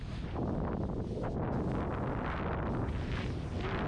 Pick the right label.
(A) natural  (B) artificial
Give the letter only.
A